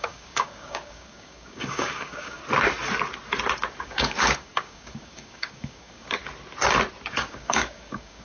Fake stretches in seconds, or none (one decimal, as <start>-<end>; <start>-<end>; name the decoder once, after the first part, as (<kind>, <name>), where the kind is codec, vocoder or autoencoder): 0.0-2.4 (codec, DAC); 3.8-6.2; 7.1-8.2